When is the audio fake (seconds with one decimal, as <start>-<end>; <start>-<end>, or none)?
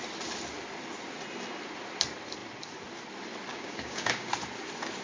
3.5-4.3